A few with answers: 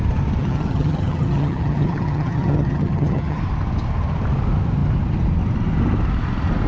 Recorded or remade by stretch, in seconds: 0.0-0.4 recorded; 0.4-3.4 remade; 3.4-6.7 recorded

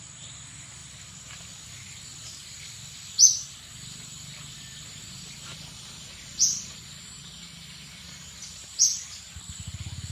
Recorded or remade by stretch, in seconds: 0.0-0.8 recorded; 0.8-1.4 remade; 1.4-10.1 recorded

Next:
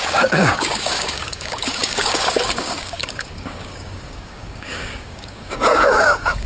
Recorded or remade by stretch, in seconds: 0.0-6.5 remade

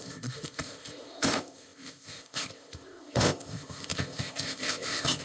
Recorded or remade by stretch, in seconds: 0.0-5.2 remade